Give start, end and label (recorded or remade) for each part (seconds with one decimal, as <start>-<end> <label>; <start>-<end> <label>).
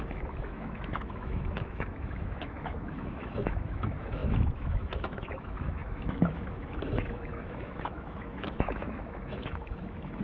0.0-10.2 remade